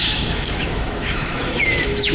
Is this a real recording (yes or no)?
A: no